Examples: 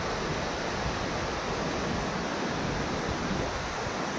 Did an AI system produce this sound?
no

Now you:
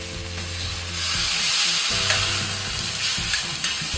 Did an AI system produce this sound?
no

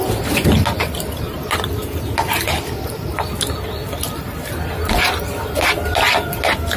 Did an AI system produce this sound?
no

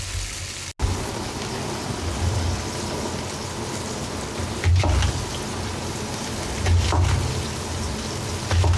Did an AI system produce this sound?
no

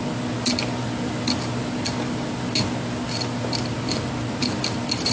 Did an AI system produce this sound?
no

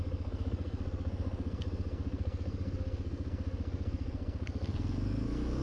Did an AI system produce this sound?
yes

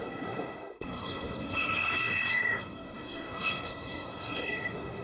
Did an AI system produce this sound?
yes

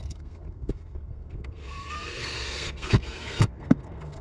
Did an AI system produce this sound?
yes